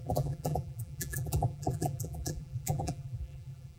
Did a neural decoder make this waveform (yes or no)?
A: yes